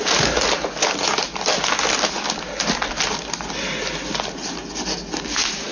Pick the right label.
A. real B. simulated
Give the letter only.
A